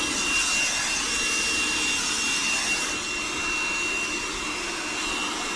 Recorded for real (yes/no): yes